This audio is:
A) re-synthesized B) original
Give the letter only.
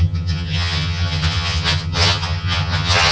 A